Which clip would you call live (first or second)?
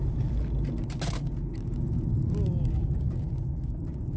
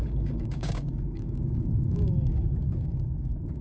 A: first